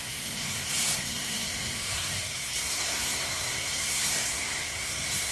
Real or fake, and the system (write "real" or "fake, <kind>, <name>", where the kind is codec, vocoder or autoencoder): fake, codec, SNAC